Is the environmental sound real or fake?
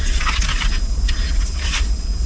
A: real